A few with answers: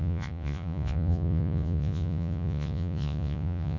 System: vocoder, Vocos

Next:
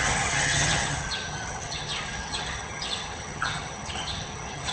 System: vocoder, HiFi-GAN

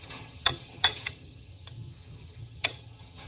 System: vocoder, HiFi-GAN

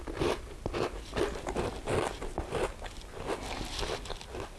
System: none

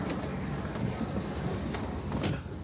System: none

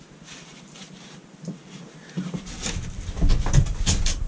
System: none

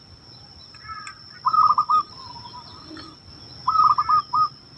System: none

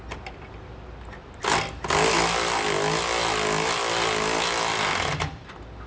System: none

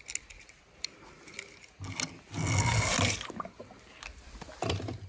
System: none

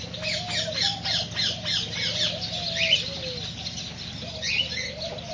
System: none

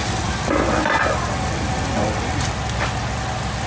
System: none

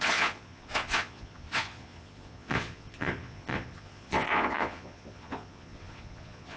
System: vocoder, Vocos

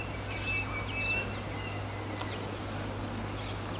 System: none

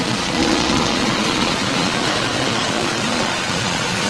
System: vocoder, Vocos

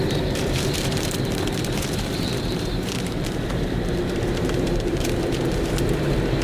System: vocoder, BigVGAN v2